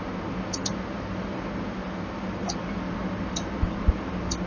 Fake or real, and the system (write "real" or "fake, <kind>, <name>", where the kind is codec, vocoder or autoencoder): real